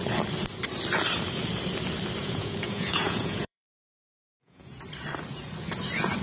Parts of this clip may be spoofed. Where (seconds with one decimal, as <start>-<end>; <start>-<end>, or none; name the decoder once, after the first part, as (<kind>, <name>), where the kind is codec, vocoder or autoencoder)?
2.2-4.8 (vocoder, Vocos)